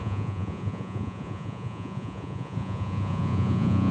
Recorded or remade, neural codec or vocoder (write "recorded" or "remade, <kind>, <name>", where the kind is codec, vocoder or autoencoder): remade, vocoder, Vocos